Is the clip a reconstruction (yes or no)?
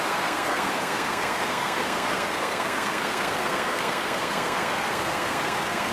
yes